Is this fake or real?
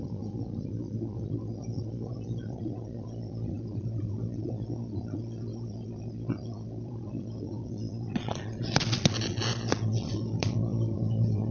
fake